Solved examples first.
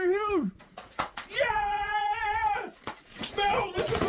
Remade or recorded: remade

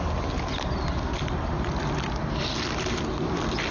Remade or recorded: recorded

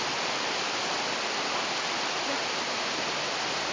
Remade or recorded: recorded